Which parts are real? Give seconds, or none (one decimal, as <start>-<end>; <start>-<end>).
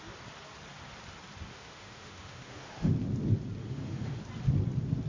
0.0-1.5; 2.9-3.6; 4.2-5.1